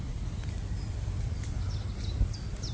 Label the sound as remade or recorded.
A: recorded